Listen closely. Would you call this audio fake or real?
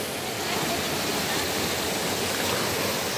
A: real